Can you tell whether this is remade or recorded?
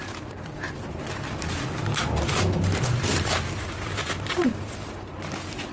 recorded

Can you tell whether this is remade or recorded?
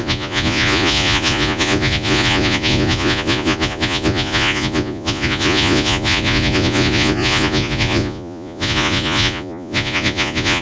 remade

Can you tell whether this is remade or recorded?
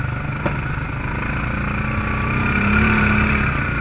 recorded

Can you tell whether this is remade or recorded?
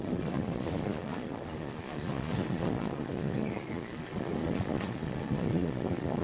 remade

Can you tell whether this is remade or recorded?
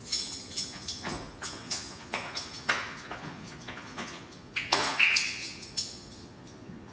remade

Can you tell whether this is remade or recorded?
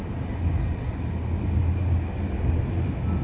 recorded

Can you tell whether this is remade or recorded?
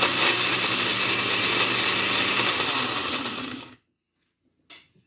recorded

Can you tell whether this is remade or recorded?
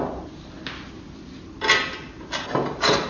recorded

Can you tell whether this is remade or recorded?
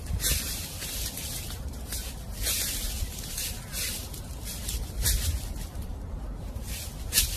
recorded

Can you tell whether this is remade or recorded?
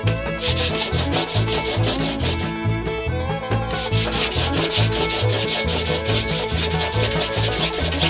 recorded